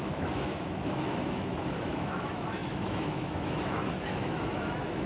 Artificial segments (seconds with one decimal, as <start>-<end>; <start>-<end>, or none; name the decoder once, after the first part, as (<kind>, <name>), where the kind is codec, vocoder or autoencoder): 0.0-5.1 (autoencoder, DAC-VAE)